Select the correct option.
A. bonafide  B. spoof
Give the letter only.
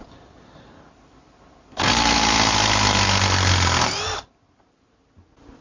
A